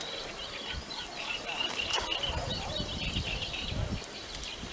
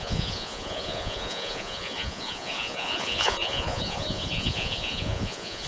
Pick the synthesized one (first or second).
second